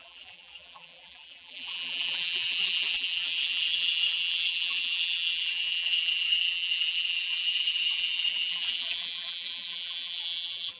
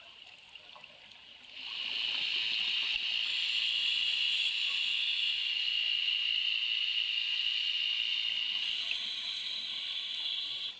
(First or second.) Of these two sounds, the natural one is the second